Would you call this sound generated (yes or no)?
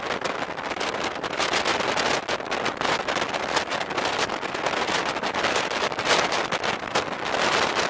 no